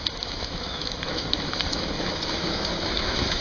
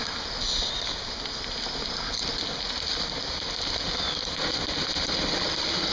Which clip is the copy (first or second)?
first